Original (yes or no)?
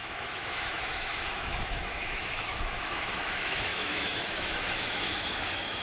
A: no